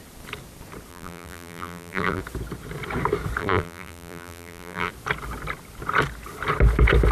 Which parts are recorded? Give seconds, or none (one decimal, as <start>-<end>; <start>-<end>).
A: 0.0-0.9; 2.2-3.4; 4.9-7.1